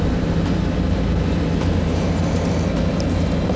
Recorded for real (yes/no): yes